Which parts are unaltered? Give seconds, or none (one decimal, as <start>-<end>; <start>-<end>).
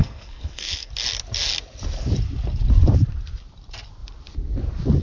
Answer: 0.9-5.0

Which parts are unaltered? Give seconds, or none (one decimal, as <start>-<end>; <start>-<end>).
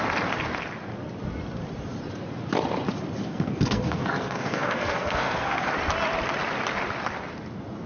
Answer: 0.0-3.2; 5.7-7.9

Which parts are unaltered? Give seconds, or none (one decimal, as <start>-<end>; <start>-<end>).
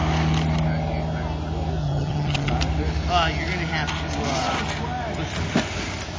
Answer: 0.0-1.8; 2.5-6.2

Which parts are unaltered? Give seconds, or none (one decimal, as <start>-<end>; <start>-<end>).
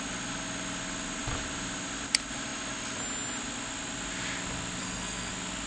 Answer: 0.0-4.8; 5.3-5.7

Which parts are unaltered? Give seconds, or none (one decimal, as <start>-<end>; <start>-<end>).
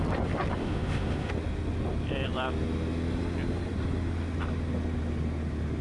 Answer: 0.0-0.6; 1.3-5.8